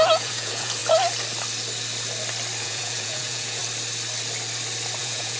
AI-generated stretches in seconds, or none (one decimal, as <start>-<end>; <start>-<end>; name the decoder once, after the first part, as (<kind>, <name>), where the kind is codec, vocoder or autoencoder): 0.0-0.8 (vocoder, Vocos); 2.6-3.6; 5.0-5.4